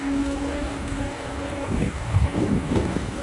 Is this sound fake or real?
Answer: fake